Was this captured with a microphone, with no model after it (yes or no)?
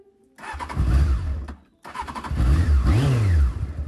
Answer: yes